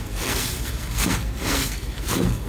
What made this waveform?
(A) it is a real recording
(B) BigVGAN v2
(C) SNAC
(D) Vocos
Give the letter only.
C